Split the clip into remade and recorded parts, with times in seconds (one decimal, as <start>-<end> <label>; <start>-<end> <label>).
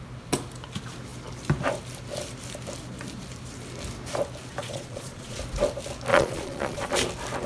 0.0-4.6 recorded; 4.6-5.4 remade; 5.4-6.1 recorded; 6.1-6.9 remade; 6.9-7.5 recorded